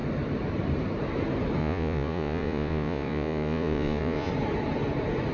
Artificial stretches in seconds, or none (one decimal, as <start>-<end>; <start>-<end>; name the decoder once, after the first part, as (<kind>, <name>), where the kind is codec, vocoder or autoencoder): 1.6-4.3 (vocoder, Vocos)